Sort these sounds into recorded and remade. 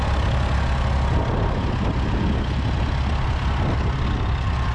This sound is recorded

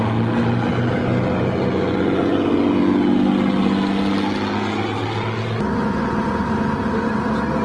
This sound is recorded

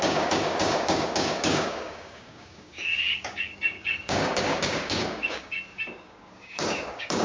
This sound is remade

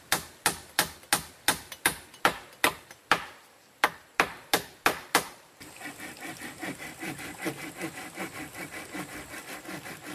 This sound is recorded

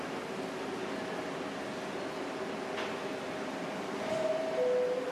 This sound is recorded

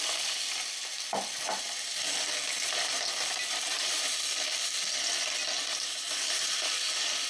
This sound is recorded